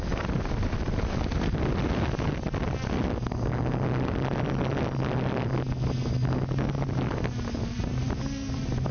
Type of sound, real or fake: real